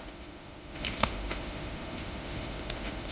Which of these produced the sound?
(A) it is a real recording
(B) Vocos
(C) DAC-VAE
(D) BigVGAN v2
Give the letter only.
C